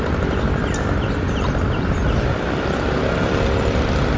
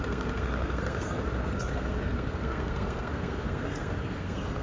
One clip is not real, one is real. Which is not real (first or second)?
second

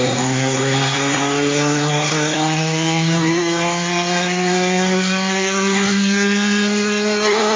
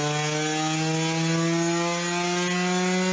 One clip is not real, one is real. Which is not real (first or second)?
first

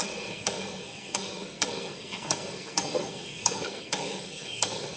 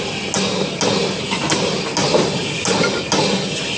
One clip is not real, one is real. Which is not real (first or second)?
first